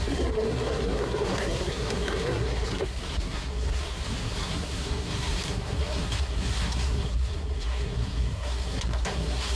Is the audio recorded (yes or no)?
no